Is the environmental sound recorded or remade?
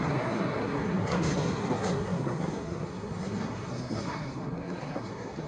remade